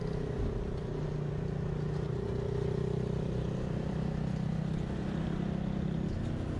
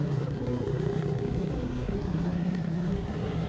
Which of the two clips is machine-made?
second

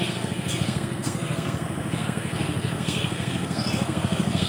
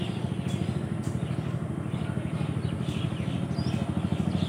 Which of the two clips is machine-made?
first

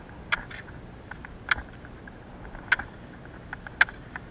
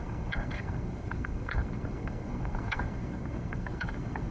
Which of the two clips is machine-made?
second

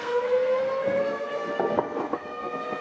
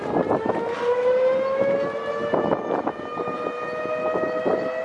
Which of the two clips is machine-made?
first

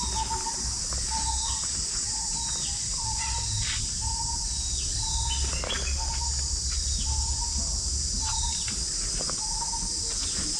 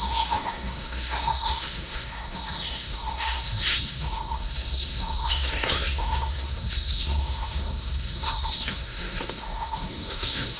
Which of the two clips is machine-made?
second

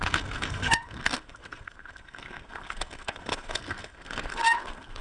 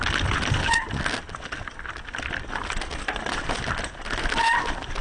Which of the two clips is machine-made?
first